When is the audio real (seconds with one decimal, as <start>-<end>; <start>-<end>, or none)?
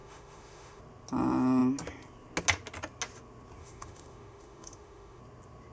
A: 0.8-3.6; 5.2-5.7